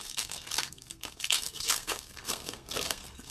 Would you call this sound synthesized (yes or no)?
yes